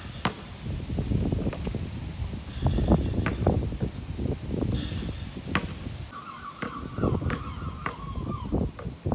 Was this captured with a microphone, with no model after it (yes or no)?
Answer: yes